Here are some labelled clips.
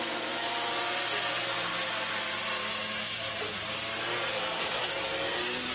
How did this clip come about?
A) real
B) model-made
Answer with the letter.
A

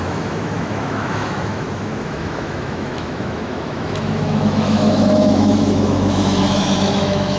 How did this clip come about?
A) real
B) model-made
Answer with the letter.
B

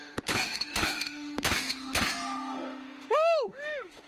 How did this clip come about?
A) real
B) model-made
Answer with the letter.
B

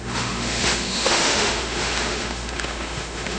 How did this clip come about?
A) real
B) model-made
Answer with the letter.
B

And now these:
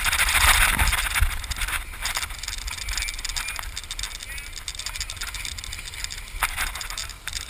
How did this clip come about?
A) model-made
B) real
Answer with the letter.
B